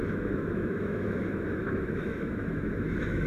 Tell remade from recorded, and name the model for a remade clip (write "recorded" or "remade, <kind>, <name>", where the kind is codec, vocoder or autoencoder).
remade, autoencoder, DAC-VAE